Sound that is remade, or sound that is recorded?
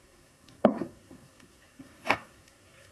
remade